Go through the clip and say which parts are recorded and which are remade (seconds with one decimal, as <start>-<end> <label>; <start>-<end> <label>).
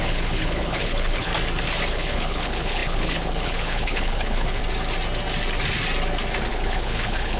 0.0-1.3 remade; 1.3-1.9 recorded; 1.9-4.6 remade; 4.6-6.5 recorded; 6.5-7.4 remade